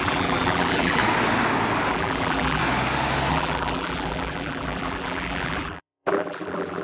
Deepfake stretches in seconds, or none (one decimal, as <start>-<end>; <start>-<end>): 0.0-1.0; 1.9-2.6; 3.3-6.8